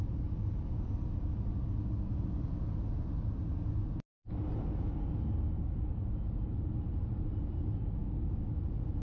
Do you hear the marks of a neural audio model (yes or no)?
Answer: no